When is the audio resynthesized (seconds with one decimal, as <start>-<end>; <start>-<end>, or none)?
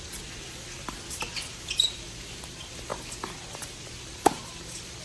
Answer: 0.0-5.0